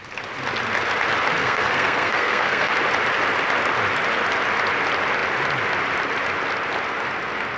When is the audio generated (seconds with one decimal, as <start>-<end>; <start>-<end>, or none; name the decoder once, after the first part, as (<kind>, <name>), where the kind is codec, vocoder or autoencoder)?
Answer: 1.4-2.7 (codec, SNAC)